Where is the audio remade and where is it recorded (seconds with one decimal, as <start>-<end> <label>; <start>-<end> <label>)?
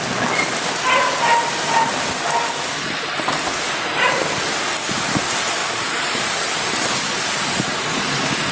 0.0-8.5 recorded